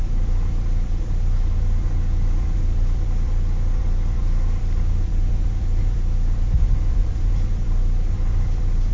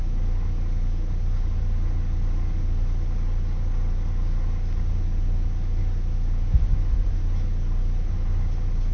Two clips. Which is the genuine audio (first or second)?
second